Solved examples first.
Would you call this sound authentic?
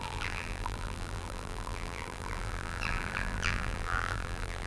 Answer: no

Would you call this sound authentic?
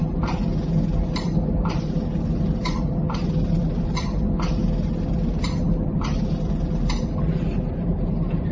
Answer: yes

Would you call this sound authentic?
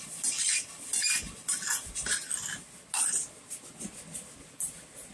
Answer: yes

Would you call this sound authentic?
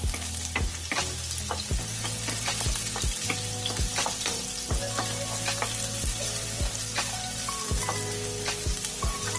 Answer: yes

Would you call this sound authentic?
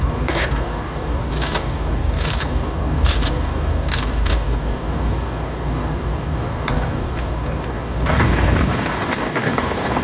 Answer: no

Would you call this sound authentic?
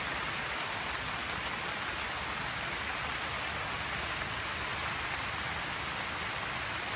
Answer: yes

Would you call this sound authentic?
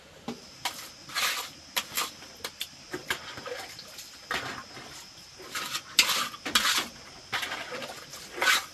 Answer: yes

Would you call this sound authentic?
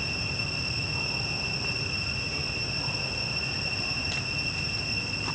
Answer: yes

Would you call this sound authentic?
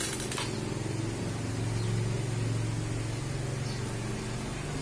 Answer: yes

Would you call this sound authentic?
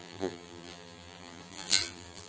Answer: no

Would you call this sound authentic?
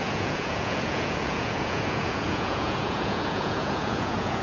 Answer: no